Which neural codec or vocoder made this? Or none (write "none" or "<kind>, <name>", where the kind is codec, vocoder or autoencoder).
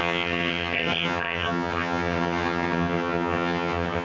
vocoder, HiFi-GAN